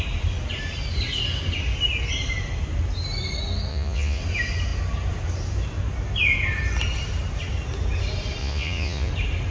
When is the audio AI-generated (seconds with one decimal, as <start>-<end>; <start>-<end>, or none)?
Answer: 3.7-4.2; 8.4-9.1